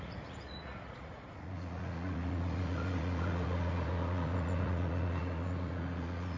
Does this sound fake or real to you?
fake